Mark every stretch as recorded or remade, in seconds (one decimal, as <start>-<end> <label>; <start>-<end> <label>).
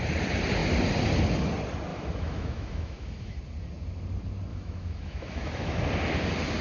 0.0-1.9 recorded; 1.9-3.4 remade; 3.4-4.5 recorded; 4.5-5.8 remade; 5.8-6.6 recorded